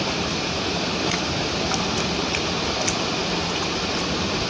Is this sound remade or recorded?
recorded